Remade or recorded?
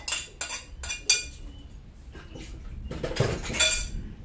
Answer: recorded